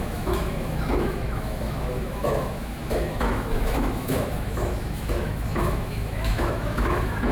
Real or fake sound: fake